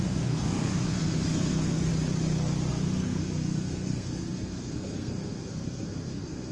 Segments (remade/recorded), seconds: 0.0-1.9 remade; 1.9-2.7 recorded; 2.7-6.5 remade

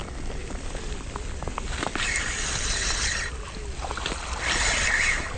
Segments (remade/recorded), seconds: 0.0-3.2 remade; 3.2-5.4 recorded

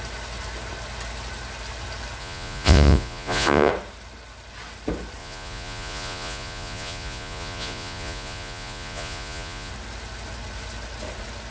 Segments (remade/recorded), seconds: 0.0-2.2 recorded; 2.2-3.7 remade; 3.7-5.2 recorded; 5.2-9.7 remade; 9.7-11.5 recorded